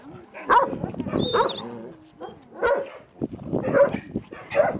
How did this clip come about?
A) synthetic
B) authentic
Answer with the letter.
B